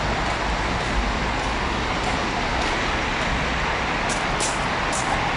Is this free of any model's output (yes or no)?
yes